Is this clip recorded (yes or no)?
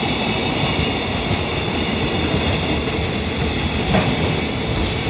yes